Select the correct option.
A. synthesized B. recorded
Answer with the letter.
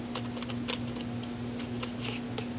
B